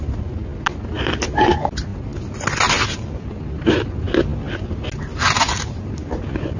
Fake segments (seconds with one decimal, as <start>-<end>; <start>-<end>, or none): none